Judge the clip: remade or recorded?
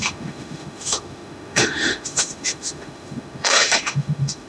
remade